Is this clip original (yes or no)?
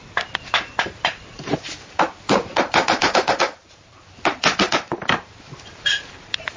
no